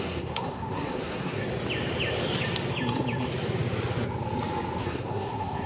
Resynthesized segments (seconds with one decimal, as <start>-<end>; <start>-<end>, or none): 0.0-1.4; 4.8-5.7